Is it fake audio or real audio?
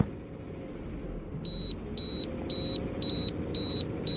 real